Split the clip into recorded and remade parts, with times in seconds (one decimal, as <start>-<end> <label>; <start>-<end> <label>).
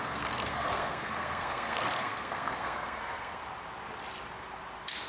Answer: 0.0-3.4 remade; 3.4-5.1 recorded